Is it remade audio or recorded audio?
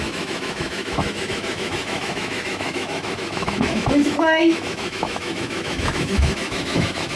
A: remade